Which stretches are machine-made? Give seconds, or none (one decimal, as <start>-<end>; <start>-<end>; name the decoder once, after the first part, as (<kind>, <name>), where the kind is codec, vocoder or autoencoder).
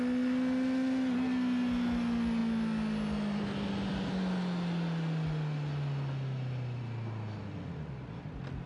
none